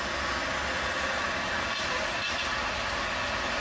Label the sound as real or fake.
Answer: real